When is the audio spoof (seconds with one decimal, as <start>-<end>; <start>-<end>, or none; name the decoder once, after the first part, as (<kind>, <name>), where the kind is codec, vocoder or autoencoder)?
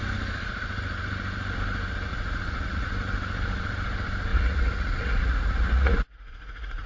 2.1-2.9 (vocoder, Vocos); 4.3-6.9